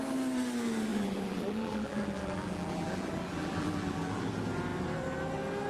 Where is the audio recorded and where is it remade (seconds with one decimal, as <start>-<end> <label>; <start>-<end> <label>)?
0.0-0.9 recorded; 0.9-4.3 remade; 4.3-5.7 recorded